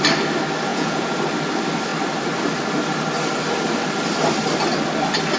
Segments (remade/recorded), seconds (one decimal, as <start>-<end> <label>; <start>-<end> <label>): 0.0-0.7 recorded; 0.7-1.2 remade; 1.2-5.4 recorded